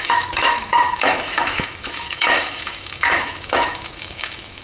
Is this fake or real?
fake